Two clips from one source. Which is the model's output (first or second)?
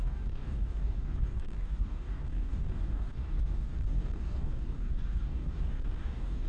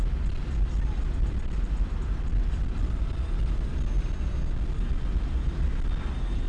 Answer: first